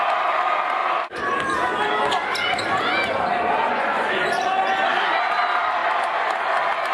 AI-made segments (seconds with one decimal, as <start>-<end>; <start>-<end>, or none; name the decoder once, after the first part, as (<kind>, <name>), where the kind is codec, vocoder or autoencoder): 3.7-4.2 (vocoder, Vocos)